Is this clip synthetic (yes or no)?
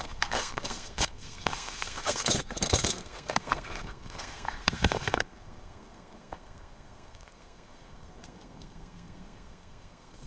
yes